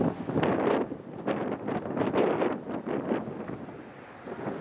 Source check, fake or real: real